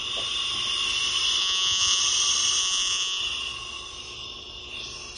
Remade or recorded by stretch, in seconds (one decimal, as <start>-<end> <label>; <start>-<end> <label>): 0.0-1.4 recorded; 1.4-2.0 remade; 2.0-2.6 recorded; 2.6-3.2 remade; 3.2-5.2 recorded